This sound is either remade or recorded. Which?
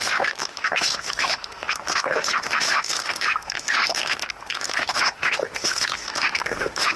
remade